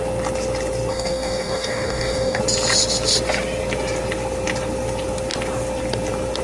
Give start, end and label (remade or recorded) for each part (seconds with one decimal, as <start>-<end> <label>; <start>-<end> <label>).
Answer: 0.0-0.9 recorded; 0.9-2.4 remade; 2.4-6.4 recorded